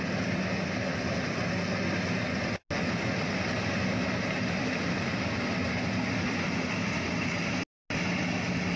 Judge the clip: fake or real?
real